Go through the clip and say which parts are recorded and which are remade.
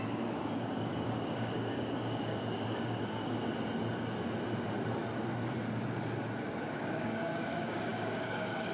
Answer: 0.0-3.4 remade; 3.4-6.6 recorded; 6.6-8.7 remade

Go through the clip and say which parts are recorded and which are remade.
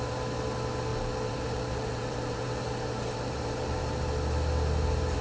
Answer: 0.0-0.9 recorded; 0.9-4.0 remade; 4.0-5.2 recorded